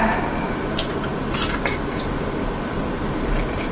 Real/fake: real